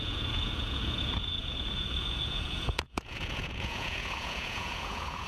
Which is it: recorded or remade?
remade